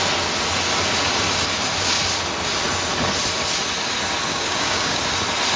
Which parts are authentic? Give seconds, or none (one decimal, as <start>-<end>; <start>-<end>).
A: 0.0-4.3; 5.0-5.6